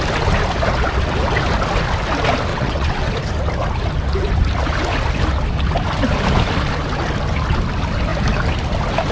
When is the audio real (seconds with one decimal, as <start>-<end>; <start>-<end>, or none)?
0.0-2.5; 3.1-9.1